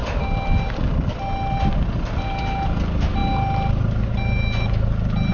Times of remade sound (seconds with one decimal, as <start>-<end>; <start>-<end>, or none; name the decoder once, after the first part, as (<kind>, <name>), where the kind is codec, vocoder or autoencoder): none